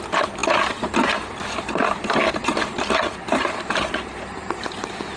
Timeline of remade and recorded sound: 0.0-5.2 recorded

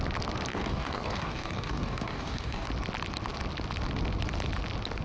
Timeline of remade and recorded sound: 0.0-0.5 recorded; 0.5-2.7 remade; 2.7-5.0 recorded

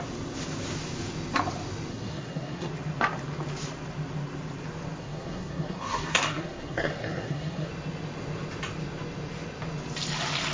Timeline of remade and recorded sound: 0.0-1.9 recorded; 1.9-2.7 remade; 2.7-5.0 recorded; 5.0-7.7 remade; 7.7-10.5 recorded

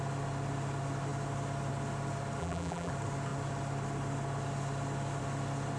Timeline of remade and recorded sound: 0.0-2.4 recorded; 2.4-2.9 remade; 2.9-5.8 recorded

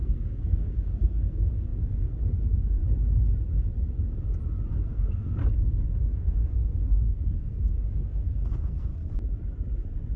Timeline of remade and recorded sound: 0.0-2.8 remade; 2.8-4.7 recorded; 4.7-5.4 remade; 5.4-5.9 recorded; 5.9-8.9 remade; 8.9-10.2 recorded

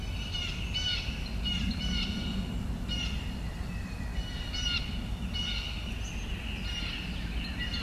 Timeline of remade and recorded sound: 0.0-7.8 recorded

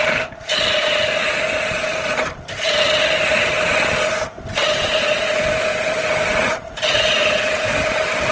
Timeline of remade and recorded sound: 0.0-8.3 recorded